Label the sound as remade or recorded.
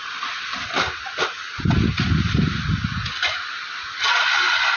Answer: recorded